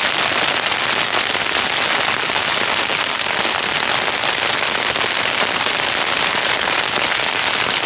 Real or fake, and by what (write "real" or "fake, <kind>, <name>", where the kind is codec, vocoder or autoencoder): real